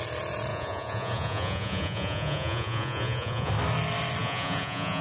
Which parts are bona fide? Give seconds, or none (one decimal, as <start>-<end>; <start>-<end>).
0.0-0.5; 3.5-4.2